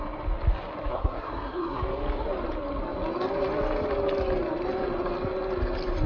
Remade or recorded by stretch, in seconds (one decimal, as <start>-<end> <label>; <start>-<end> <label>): 0.0-0.9 recorded; 0.9-1.8 remade; 1.8-6.1 recorded